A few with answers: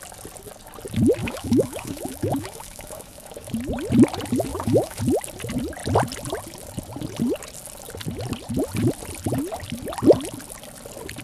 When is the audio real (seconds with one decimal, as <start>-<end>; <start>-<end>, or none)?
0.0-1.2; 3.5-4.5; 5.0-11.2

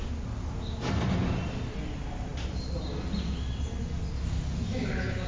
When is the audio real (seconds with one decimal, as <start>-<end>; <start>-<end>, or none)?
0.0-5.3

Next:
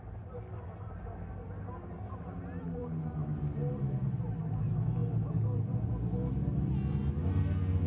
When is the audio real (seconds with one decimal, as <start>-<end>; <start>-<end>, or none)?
0.0-7.9

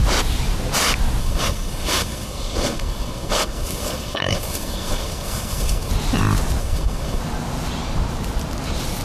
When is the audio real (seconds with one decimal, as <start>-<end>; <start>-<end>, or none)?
0.0-1.2; 5.9-6.6; 7.2-9.0

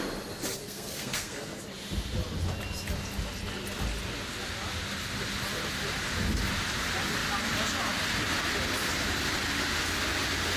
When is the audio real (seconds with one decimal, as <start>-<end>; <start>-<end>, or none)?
0.0-0.5; 1.6-10.6